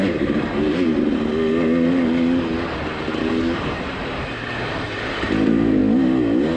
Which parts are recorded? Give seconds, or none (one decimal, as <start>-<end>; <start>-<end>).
1.3-3.2; 5.8-6.6